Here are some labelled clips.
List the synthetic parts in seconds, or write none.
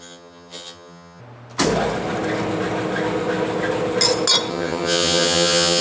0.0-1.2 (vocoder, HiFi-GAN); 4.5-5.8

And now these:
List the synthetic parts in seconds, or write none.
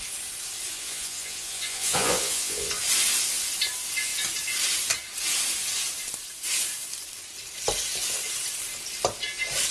0.7-2.7 (vocoder, Vocos)